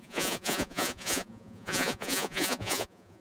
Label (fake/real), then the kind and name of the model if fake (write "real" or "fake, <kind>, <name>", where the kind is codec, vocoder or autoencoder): fake, vocoder, Vocos